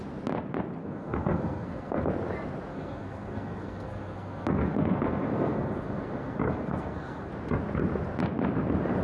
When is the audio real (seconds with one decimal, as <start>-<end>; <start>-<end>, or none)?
0.0-0.8; 2.1-2.7; 7.3-9.0